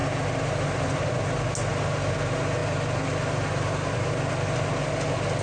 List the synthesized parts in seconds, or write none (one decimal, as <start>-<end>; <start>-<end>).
none